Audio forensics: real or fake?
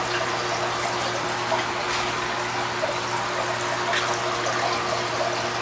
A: real